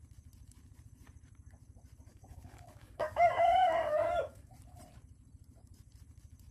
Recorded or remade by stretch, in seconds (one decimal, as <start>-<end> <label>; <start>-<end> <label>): 0.0-2.1 recorded; 2.1-4.5 remade; 4.5-6.5 recorded